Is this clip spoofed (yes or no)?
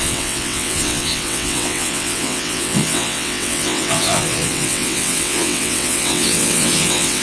yes